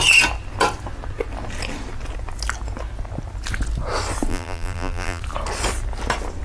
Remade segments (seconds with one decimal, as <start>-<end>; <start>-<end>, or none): 4.3-5.2